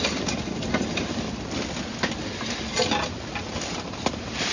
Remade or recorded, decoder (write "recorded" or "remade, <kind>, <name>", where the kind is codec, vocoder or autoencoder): recorded